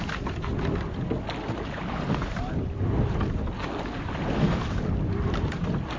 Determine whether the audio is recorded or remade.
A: recorded